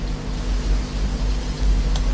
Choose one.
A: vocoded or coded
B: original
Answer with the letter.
B